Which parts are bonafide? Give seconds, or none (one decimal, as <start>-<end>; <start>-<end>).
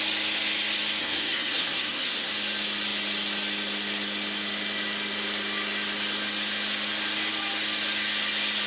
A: 0.0-1.0; 2.3-8.7